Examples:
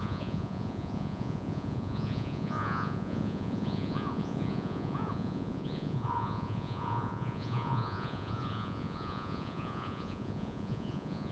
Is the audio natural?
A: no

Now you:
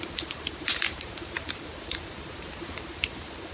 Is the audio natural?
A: no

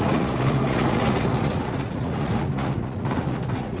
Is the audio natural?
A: no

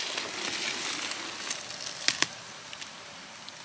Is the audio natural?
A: yes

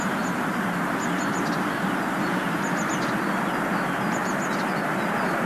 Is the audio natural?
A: yes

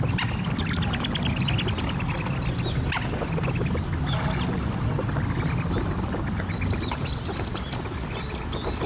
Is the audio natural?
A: yes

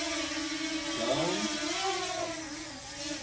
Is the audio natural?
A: yes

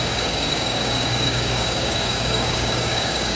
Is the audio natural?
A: no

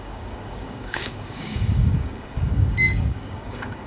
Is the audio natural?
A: no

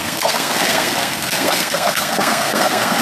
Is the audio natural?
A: no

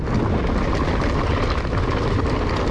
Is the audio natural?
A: yes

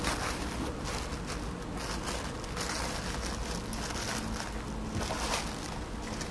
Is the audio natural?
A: yes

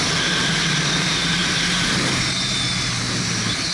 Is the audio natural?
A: yes